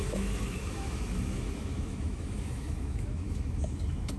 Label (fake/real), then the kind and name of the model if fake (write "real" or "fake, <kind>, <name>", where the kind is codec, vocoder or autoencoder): fake, autoencoder, DAC-VAE